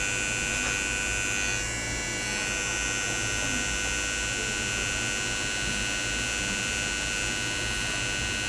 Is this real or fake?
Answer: real